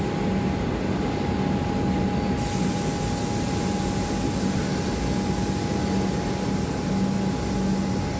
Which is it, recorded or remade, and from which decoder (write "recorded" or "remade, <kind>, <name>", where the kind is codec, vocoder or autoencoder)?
recorded